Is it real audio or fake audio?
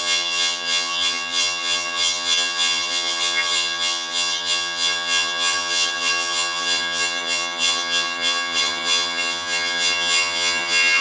fake